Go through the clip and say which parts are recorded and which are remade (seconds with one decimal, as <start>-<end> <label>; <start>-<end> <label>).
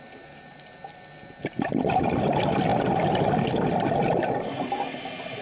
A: 0.0-5.4 recorded